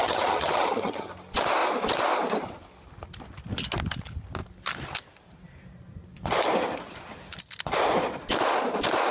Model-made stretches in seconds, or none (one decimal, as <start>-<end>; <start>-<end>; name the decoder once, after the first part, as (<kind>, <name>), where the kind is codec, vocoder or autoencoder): 0.0-1.1 (vocoder, HiFi-GAN)